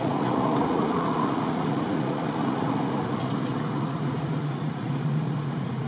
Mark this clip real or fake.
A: fake